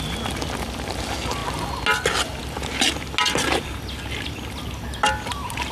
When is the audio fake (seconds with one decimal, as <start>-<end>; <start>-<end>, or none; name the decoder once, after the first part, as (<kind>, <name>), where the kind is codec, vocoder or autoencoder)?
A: none